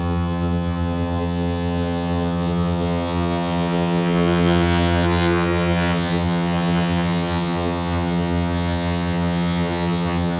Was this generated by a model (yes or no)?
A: yes